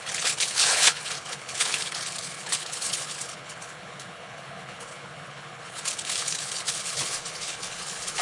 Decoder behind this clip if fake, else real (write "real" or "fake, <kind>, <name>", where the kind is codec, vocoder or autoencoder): fake, codec, HILCodec